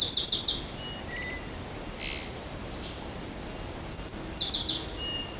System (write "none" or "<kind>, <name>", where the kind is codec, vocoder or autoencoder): none